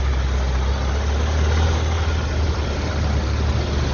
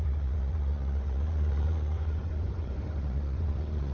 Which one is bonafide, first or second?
first